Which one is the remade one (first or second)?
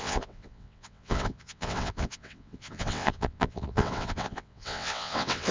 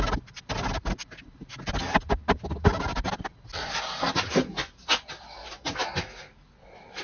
first